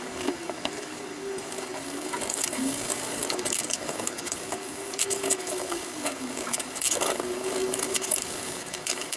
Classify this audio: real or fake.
fake